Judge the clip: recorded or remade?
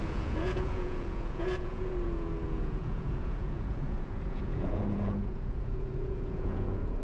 remade